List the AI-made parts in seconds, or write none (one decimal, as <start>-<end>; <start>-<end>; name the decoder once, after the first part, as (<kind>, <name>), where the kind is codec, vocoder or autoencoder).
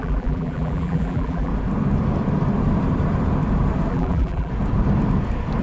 0.0-1.5 (vocoder, BigVGAN v2); 3.9-4.5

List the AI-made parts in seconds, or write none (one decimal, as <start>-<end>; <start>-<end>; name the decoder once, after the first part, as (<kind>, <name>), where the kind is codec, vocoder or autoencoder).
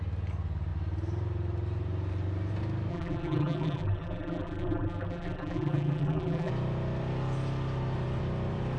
2.9-6.5 (vocoder, BigVGAN v2)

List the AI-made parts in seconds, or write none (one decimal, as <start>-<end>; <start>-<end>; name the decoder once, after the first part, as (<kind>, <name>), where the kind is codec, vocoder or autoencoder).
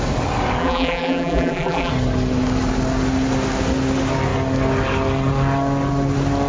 0.6-1.9 (vocoder, BigVGAN v2)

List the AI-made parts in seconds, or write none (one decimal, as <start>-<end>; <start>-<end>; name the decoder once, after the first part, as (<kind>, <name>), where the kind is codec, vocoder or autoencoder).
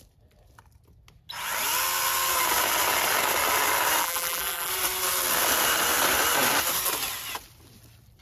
4.0-4.7 (vocoder, BigVGAN v2)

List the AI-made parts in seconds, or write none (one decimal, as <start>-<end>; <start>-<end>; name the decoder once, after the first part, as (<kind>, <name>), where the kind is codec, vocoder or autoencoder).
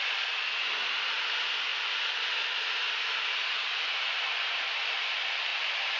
none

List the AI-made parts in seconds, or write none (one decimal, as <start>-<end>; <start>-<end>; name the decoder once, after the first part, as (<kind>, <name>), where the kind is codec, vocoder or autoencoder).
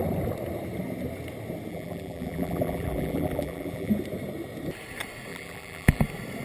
1.7-3.9 (vocoder, BigVGAN v2); 5.3-6.0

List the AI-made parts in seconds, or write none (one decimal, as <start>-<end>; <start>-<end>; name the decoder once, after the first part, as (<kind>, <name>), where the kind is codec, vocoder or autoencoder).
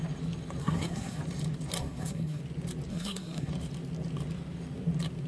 0.6-1.2 (codec, SNAC); 1.8-2.4; 2.9-3.5